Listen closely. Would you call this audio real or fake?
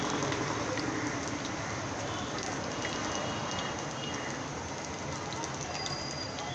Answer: real